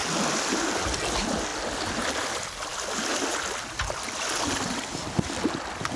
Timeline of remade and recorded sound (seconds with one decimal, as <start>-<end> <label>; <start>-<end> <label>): 0.0-6.0 recorded